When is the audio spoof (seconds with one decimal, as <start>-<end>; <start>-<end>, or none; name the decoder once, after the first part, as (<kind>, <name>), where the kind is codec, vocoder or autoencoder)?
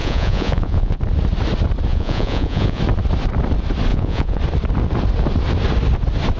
0.0-1.0 (vocoder, Vocos); 1.9-2.8; 3.9-4.4